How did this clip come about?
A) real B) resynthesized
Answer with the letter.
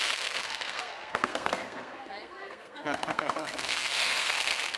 B